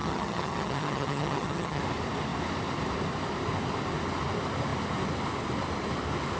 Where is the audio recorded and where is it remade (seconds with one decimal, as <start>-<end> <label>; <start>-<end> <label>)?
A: 0.0-1.8 remade; 1.8-6.4 recorded

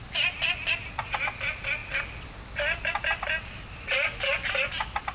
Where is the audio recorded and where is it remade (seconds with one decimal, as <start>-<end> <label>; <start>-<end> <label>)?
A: 0.0-5.1 recorded